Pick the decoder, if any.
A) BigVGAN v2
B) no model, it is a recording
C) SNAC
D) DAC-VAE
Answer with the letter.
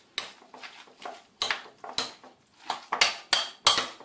B